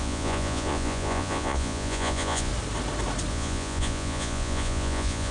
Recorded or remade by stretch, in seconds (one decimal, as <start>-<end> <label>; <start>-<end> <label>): 0.0-2.5 remade; 2.5-3.3 recorded; 3.3-5.3 remade